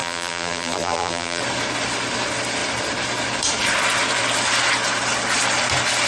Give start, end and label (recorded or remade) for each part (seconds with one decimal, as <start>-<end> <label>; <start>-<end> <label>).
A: 0.0-1.4 remade; 1.4-6.1 recorded